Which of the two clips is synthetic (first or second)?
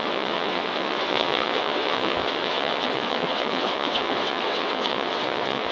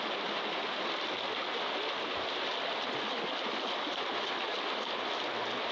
first